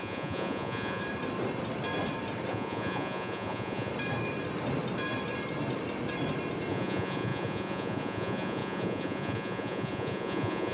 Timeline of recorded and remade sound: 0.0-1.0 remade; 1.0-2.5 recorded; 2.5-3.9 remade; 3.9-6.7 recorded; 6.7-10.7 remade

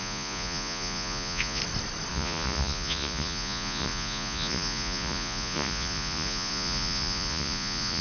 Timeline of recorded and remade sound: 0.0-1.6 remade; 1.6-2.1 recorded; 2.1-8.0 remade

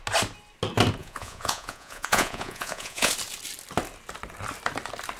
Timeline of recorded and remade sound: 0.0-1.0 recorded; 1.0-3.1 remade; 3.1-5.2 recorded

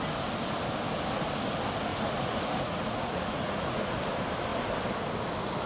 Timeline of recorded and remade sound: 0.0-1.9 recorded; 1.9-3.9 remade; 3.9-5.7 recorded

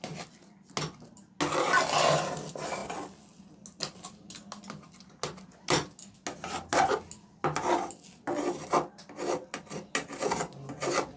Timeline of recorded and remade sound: 0.0-11.2 recorded

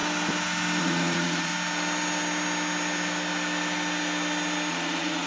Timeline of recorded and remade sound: 0.0-0.8 recorded; 0.8-1.5 remade; 1.5-4.7 recorded; 4.7-5.3 remade